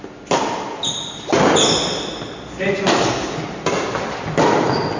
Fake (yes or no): no